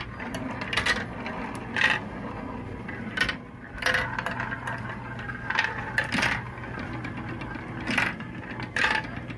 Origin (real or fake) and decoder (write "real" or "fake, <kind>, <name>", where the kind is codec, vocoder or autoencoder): real